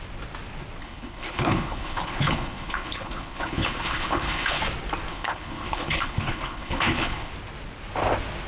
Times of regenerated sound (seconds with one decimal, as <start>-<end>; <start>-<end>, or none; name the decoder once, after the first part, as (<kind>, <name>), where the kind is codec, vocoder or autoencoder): 0.8-4.6 (codec, HILCodec); 5.1-7.3